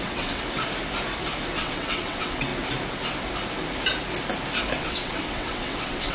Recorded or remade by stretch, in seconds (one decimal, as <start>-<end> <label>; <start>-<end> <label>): 0.0-0.4 remade; 0.4-1.6 recorded; 1.6-2.5 remade; 2.5-4.8 recorded; 4.8-6.1 remade